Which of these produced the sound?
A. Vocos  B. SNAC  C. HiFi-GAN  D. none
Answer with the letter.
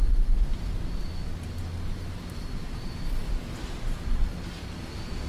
D